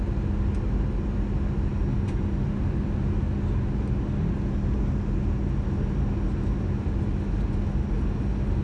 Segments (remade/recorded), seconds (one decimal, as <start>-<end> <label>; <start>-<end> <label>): 0.0-8.6 recorded